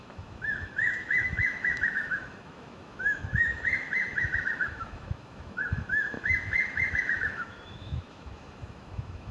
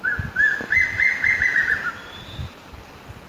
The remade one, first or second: first